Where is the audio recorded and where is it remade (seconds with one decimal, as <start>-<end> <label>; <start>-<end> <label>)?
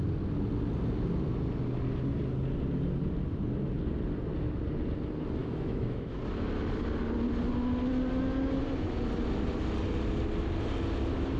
0.0-5.4 recorded; 5.4-6.2 remade; 6.2-11.4 recorded